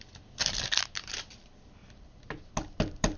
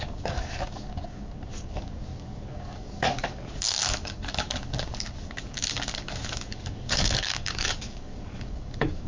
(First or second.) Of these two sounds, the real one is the first